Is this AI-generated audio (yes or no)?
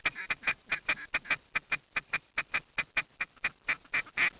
no